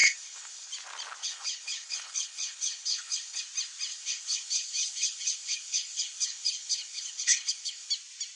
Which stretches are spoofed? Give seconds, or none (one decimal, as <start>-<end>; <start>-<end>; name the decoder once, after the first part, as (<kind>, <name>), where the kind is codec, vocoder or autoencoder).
0.0-0.7 (codec, HILCodec); 1.2-3.4; 3.9-7.9

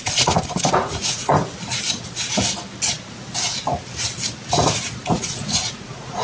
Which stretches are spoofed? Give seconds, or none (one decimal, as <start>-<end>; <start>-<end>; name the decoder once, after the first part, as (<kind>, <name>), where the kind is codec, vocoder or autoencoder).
0.0-1.3 (vocoder, Vocos); 5.0-6.2